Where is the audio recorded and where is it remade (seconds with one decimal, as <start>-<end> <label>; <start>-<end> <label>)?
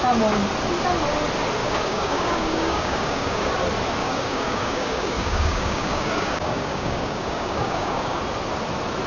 0.0-1.6 recorded; 1.6-3.5 remade; 3.5-4.0 recorded; 4.0-8.2 remade; 8.2-9.1 recorded